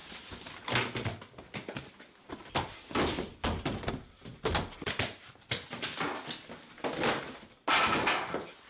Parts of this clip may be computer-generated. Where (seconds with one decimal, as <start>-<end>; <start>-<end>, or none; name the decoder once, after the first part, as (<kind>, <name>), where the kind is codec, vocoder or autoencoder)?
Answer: none